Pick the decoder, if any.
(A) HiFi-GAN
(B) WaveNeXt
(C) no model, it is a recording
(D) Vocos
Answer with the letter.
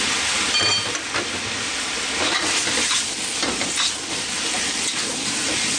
C